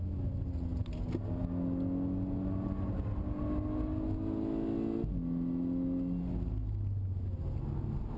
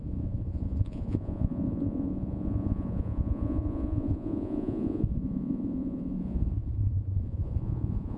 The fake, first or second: second